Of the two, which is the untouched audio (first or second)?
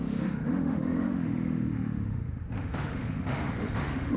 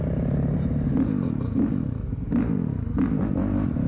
second